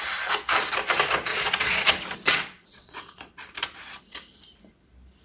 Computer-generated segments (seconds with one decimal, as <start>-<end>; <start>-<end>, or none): 1.3-1.9; 2.3-3.4